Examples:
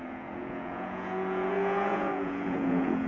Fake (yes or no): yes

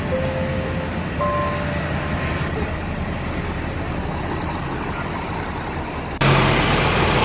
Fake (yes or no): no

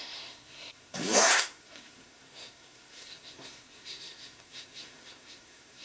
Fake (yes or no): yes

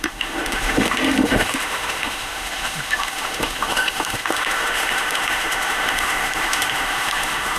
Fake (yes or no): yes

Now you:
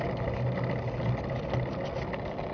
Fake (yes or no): no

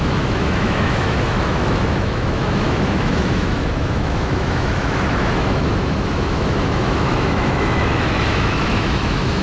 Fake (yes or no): yes